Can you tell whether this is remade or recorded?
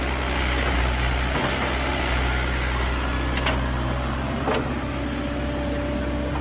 recorded